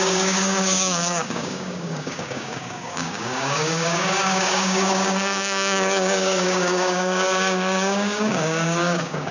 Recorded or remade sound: remade